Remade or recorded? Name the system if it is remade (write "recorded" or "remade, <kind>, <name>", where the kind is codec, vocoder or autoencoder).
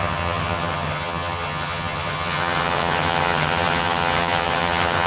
remade, vocoder, HiFi-GAN